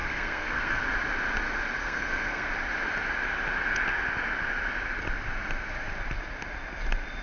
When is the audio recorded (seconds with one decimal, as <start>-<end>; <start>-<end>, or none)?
0.8-1.8; 2.5-7.2